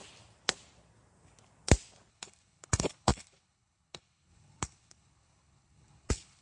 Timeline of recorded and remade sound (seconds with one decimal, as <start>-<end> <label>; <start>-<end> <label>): 0.0-2.1 recorded; 2.1-6.4 remade